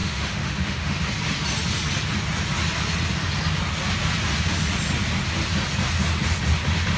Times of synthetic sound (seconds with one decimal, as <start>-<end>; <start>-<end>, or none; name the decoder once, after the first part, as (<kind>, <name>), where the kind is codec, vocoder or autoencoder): 0.0-1.0 (autoencoder, DAC-VAE)